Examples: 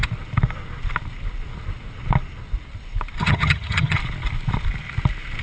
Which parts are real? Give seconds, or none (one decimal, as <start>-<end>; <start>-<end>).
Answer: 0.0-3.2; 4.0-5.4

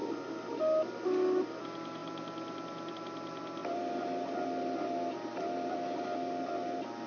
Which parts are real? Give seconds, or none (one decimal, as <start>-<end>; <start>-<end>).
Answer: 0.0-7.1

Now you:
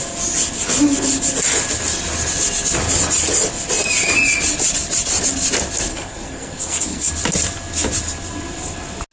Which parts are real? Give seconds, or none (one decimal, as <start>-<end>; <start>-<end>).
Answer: 0.0-5.9; 7.1-9.1

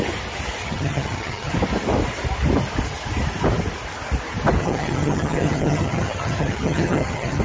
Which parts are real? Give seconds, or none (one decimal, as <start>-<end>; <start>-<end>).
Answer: 0.0-0.6; 1.5-4.6

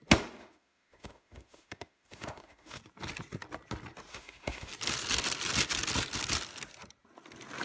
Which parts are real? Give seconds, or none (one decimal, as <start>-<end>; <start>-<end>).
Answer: 0.0-0.4; 2.8-4.1; 4.7-7.6